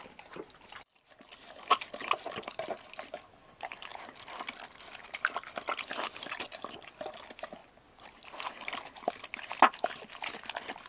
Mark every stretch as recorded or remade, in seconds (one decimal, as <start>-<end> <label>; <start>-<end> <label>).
0.0-10.9 recorded